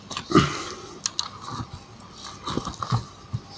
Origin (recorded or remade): recorded